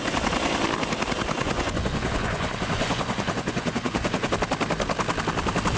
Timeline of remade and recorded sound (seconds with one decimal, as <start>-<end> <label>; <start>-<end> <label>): 0.0-1.4 recorded; 1.4-4.3 remade; 4.3-5.8 recorded